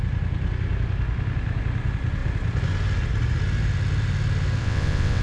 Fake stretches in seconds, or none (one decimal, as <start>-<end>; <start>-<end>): 4.6-5.2

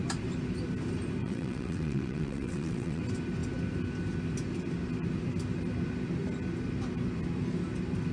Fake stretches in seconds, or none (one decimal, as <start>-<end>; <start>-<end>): 1.2-3.0

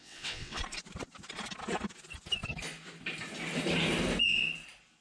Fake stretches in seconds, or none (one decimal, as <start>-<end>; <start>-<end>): 0.0-0.6

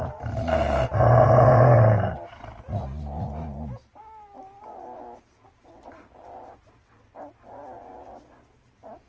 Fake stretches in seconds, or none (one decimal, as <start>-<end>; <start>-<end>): none

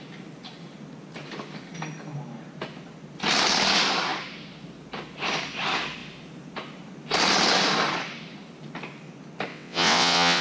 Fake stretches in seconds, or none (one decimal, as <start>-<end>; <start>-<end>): 9.5-10.4

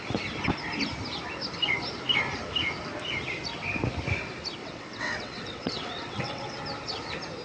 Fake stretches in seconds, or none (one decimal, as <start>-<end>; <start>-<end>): 4.6-6.6